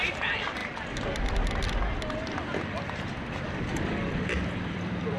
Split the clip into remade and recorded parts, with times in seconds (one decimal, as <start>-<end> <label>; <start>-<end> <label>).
0.0-0.6 remade; 0.6-2.4 recorded; 2.4-5.2 remade